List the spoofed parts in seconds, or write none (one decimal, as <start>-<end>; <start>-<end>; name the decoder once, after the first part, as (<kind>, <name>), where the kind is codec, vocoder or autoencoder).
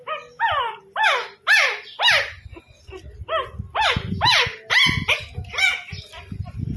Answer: none